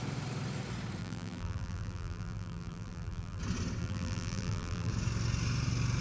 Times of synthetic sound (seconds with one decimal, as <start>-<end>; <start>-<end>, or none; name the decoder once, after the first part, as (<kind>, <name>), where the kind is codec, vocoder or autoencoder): 1.0-3.4 (vocoder, BigVGAN v2); 3.8-4.9